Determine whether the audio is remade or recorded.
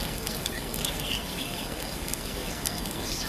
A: remade